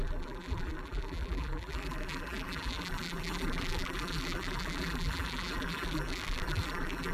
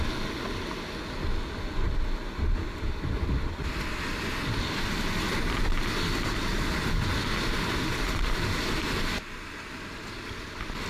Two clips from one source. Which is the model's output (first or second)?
first